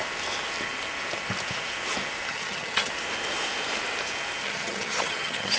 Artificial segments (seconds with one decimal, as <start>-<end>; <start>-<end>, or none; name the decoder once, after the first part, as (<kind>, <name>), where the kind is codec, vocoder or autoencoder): 2.3-2.9 (vocoder, HiFi-GAN); 4.4-5.6